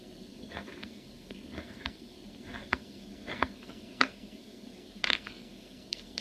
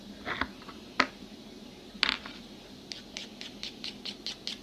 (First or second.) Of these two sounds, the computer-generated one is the first